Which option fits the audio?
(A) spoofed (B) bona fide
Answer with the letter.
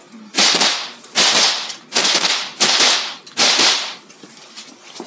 B